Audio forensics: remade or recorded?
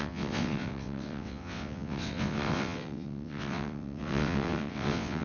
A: remade